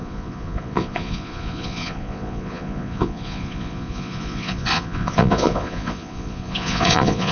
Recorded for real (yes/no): no